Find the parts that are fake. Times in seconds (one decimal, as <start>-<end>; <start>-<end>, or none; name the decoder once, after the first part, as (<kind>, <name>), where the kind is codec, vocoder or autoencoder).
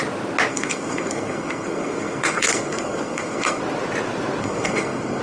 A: 0.5-3.6 (codec, SNAC); 4.4-5.2